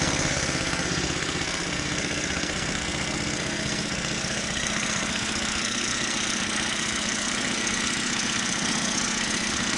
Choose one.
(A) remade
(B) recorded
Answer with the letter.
A